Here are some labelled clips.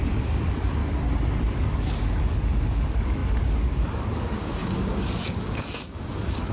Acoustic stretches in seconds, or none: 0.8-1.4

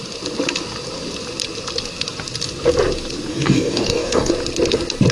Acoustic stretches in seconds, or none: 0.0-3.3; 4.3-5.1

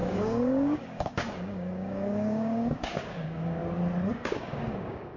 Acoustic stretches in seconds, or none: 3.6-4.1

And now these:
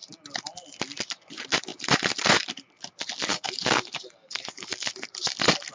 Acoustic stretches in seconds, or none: 0.0-3.3; 4.9-5.7